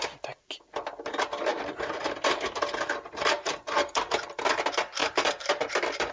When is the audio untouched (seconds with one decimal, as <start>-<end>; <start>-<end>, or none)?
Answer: 0.0-1.5; 4.4-5.0